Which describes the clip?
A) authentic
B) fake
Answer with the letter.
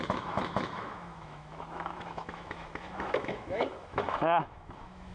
B